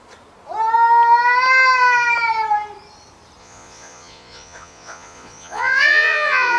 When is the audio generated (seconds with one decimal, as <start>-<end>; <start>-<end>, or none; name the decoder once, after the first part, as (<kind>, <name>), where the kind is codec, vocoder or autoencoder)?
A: 3.4-6.6 (vocoder, Vocos)